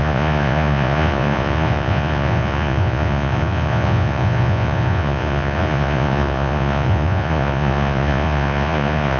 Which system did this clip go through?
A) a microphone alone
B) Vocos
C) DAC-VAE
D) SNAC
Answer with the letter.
B